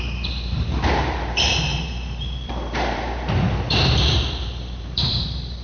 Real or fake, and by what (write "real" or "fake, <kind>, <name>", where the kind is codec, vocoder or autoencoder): fake, vocoder, BigVGAN v2